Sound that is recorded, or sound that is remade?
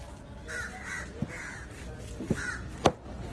recorded